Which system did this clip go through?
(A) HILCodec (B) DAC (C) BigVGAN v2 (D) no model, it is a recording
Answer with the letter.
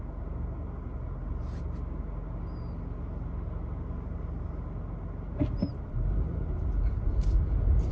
D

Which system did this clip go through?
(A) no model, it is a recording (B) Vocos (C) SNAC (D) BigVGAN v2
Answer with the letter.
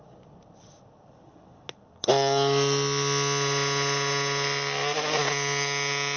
A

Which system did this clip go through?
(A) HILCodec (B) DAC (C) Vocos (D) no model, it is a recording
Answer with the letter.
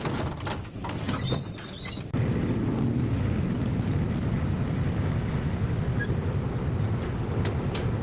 D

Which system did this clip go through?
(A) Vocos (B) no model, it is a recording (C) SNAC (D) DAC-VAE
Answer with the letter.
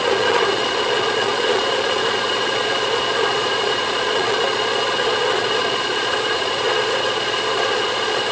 A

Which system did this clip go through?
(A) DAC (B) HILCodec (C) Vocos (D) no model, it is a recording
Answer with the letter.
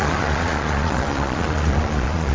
C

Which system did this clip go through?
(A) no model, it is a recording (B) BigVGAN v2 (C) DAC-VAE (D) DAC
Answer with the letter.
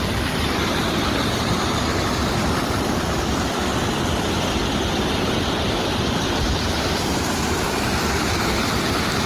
A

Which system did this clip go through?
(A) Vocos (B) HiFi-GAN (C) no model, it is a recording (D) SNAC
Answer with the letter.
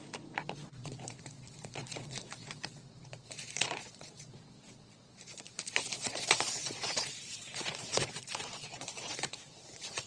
A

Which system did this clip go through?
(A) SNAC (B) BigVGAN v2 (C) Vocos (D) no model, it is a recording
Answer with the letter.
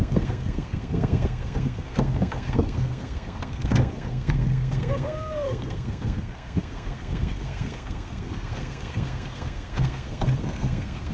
A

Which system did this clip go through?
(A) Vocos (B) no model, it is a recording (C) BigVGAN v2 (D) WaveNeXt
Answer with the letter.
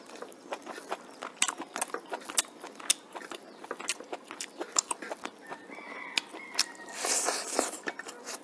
B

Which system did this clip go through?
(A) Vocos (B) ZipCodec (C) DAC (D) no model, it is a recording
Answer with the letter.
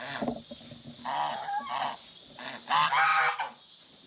D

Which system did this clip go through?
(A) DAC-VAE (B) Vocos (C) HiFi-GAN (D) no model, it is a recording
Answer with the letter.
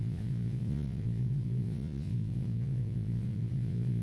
B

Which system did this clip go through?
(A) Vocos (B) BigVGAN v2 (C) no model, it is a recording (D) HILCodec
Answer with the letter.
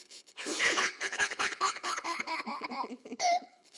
D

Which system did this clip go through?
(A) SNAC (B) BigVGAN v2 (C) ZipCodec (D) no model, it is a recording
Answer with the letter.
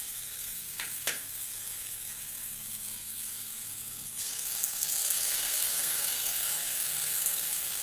A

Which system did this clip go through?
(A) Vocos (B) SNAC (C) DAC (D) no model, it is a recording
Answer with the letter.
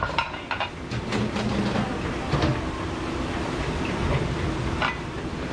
D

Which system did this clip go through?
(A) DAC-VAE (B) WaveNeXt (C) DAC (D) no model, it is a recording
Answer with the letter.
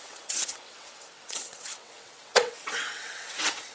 B